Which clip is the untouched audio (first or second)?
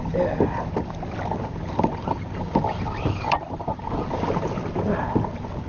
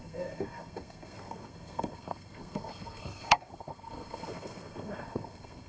first